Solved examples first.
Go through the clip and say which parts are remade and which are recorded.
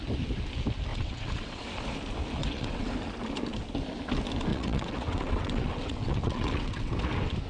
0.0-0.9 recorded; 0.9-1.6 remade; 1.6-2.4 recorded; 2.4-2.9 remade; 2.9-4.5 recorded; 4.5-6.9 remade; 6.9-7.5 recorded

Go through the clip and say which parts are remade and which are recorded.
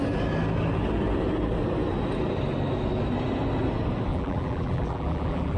0.0-4.1 recorded; 4.1-5.6 remade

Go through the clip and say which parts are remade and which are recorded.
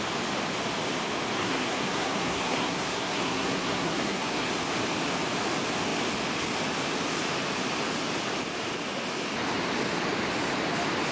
0.0-1.4 recorded; 1.4-4.5 remade; 4.5-11.1 recorded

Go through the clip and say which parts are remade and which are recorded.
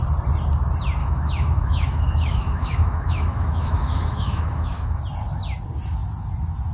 0.0-1.0 recorded; 1.0-5.0 remade; 5.0-6.7 recorded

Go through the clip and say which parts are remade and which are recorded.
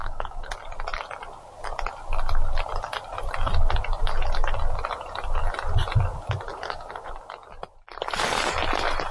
0.0-0.5 remade; 0.5-6.5 recorded; 6.5-7.1 remade; 7.1-9.1 recorded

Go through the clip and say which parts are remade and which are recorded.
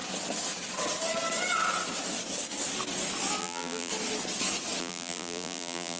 0.0-3.4 recorded; 3.4-3.9 remade; 3.9-4.8 recorded; 4.8-6.0 remade